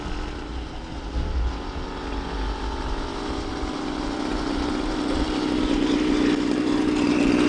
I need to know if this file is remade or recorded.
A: recorded